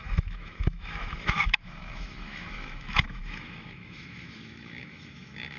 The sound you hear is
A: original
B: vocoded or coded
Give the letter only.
B